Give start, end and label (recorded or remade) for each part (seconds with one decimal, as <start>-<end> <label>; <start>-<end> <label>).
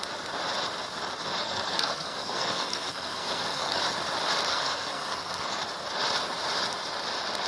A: 0.0-1.4 recorded; 1.4-3.8 remade; 3.8-4.5 recorded; 4.5-5.6 remade; 5.6-7.5 recorded